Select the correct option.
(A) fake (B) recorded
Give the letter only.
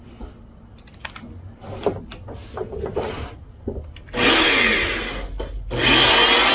B